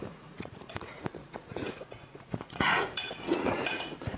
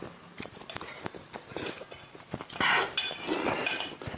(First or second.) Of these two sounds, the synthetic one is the first